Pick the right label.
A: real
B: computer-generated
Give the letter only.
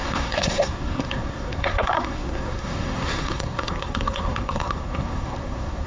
B